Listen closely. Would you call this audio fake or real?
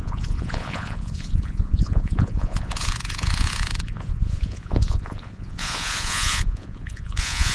fake